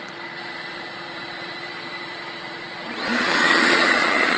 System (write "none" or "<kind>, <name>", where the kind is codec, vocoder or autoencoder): vocoder, Vocos